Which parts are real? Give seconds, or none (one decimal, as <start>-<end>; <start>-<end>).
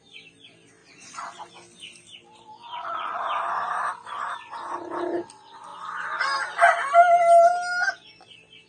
0.0-0.8; 1.5-2.6; 3.2-8.7